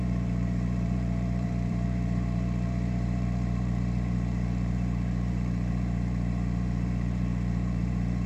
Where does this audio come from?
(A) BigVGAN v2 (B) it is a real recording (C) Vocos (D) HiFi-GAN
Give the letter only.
A